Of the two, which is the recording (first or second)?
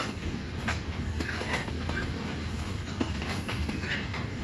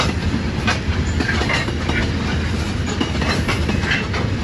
second